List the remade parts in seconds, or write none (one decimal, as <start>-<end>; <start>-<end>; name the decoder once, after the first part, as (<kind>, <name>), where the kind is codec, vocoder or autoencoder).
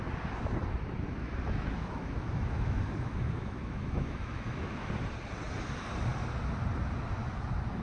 1.2-4.9 (autoencoder, DAC-VAE)